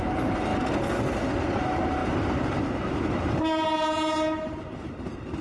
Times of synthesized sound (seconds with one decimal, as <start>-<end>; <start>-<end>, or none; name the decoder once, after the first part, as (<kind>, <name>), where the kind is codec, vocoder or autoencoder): 0.0-0.5 (vocoder, BigVGAN v2); 1.6-5.4